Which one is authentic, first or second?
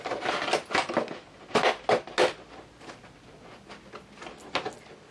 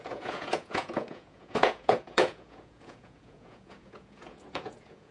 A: first